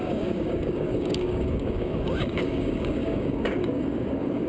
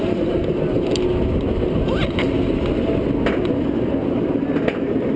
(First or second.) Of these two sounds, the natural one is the second